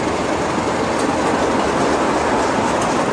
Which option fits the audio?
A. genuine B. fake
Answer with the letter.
A